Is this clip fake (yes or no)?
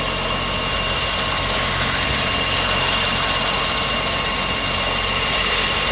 no